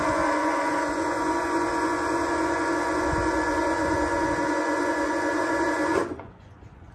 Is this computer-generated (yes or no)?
yes